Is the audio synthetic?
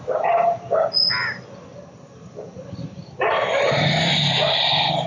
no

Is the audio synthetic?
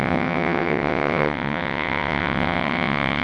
yes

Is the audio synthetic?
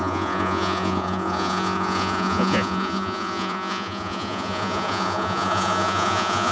yes